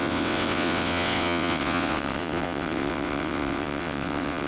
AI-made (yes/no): yes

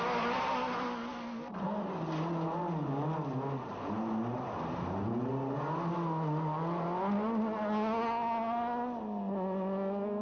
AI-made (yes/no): no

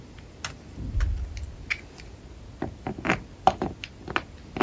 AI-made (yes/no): no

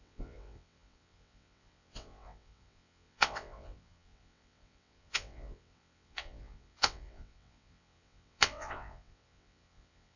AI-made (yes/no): yes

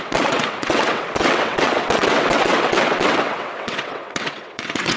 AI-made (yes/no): yes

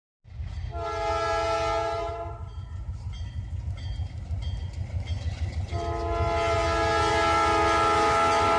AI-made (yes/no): no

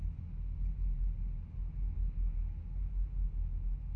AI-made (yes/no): no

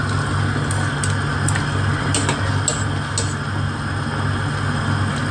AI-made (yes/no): no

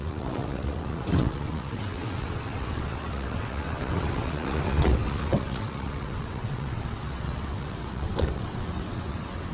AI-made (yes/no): yes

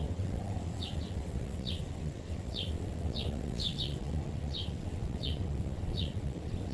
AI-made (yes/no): yes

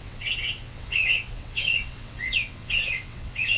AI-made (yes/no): yes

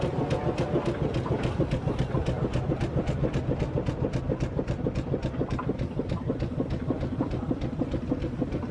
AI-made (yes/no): no